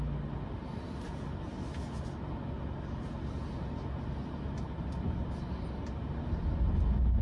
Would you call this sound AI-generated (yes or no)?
no